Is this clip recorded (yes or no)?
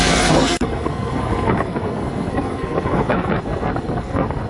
no